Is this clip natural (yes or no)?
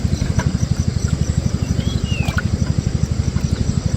no